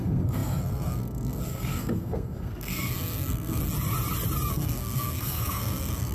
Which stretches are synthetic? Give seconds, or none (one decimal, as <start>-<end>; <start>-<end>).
0.0-3.6; 4.5-6.1